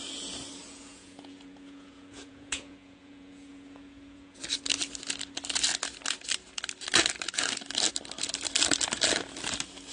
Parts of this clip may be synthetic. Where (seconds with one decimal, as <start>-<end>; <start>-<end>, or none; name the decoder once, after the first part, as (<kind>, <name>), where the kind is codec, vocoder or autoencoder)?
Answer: 0.6-4.4 (vocoder, Vocos)